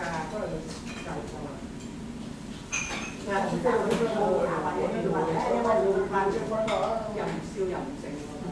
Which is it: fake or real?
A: real